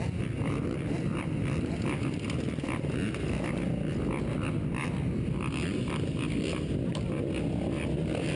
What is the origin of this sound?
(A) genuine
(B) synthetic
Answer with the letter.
A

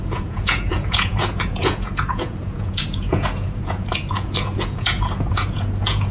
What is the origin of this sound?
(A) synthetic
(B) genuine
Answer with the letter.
A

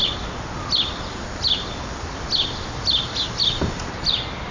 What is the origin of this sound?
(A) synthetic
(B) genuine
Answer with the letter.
B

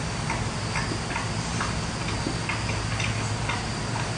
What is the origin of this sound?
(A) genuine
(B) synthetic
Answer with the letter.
A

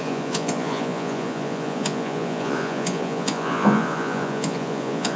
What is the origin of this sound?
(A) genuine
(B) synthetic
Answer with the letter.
B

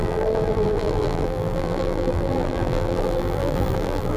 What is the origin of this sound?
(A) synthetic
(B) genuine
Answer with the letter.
A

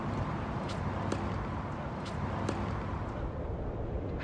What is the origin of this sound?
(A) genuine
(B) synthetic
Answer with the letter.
A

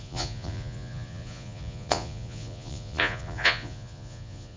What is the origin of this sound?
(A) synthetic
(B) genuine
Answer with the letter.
A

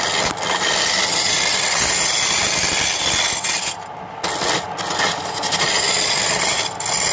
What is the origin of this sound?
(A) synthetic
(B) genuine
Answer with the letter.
B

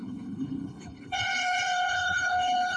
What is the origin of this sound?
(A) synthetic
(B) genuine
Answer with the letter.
A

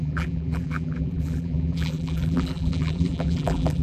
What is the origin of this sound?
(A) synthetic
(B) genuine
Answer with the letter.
A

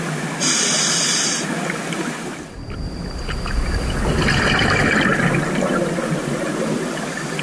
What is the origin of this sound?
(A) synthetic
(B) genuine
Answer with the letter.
B